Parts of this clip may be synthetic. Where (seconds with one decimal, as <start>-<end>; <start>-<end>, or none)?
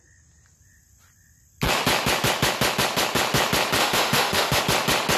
3.8-4.6